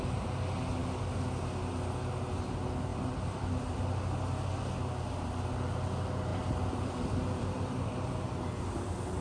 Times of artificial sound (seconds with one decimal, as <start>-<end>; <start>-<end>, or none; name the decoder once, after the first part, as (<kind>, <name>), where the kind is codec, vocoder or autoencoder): 2.9-4.0 (vocoder, BigVGAN v2); 6.3-8.0